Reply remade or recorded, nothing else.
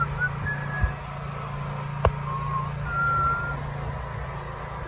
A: recorded